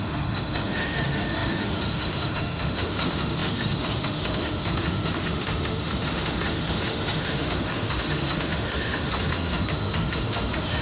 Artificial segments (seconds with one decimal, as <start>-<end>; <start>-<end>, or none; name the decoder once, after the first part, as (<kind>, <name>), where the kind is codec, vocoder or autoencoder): 0.0-10.8 (autoencoder, DAC-VAE)